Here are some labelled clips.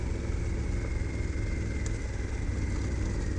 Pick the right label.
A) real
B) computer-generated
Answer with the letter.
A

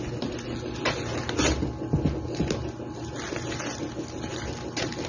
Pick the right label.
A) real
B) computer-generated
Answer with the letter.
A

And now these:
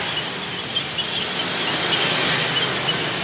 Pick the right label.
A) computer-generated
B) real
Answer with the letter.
B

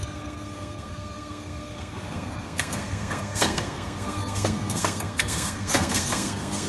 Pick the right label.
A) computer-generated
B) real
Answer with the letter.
A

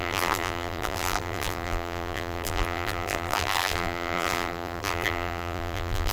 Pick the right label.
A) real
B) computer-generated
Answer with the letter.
B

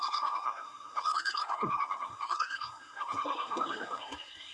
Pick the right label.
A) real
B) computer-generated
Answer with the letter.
B